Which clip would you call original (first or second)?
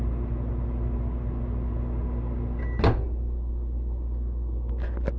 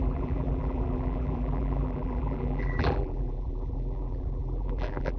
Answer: first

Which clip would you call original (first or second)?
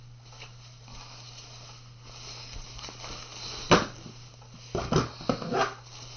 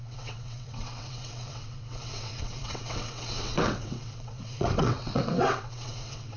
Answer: first